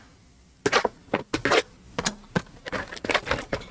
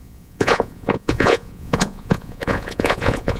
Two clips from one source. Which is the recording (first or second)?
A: first